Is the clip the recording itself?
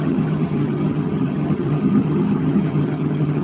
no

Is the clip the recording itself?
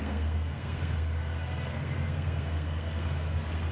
no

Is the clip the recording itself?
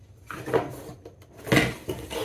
yes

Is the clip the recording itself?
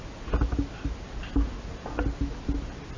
yes